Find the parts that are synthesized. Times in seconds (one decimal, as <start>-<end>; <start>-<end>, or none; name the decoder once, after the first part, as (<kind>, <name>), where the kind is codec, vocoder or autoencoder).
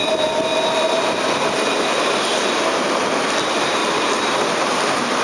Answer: none